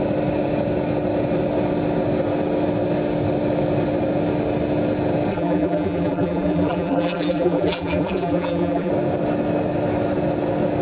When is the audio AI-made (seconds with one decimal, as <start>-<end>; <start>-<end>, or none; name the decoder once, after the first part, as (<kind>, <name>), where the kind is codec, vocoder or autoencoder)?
5.3-8.9 (vocoder, BigVGAN v2)